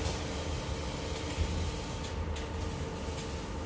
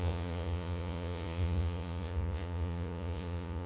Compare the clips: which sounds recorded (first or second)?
first